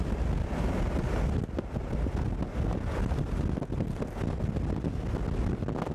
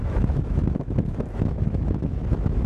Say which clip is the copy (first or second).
second